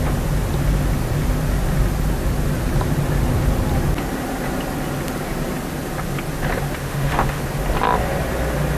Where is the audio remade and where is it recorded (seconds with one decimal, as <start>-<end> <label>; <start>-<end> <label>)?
0.0-6.8 recorded; 6.8-7.4 remade; 7.4-8.8 recorded